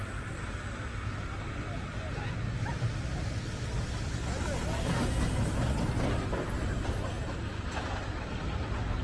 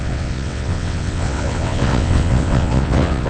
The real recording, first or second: first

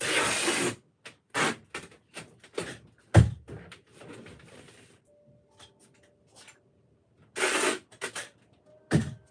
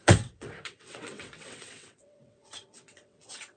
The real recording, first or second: first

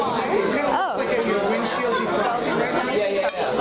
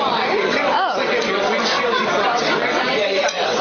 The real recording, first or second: first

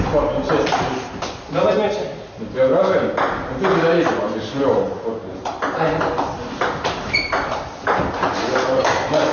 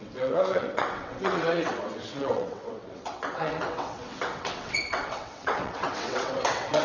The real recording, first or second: first